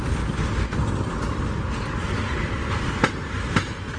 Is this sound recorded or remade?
recorded